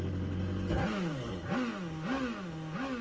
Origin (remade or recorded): recorded